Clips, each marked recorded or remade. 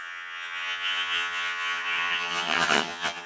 remade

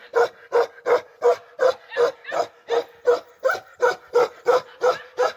recorded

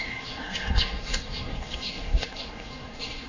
remade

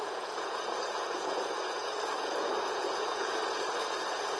remade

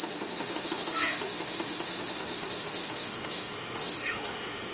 remade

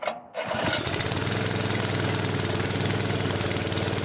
recorded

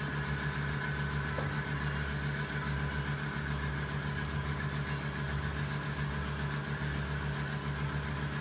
recorded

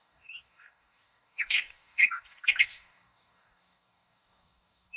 remade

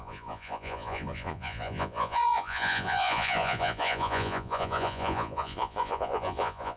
remade